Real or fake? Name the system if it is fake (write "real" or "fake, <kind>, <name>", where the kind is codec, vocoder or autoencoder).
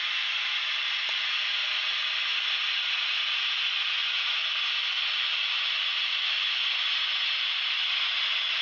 real